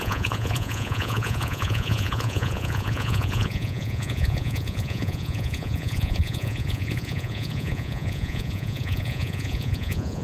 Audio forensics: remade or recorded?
remade